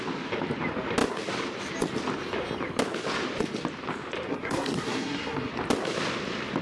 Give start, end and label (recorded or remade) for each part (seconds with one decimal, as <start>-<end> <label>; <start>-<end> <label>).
0.0-4.3 recorded; 4.3-5.5 remade; 5.5-6.6 recorded